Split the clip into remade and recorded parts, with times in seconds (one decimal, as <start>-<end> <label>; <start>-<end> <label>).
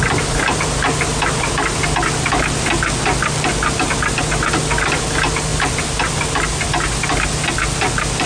0.0-8.3 recorded